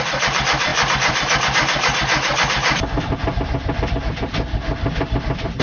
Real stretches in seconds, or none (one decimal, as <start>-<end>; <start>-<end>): none